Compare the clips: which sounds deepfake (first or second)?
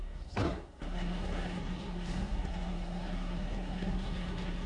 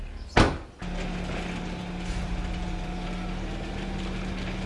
first